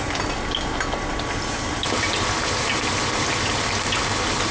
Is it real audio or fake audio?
real